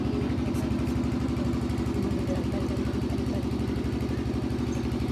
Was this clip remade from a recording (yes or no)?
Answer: no